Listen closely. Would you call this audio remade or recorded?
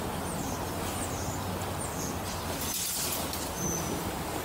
recorded